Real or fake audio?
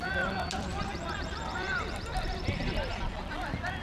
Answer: real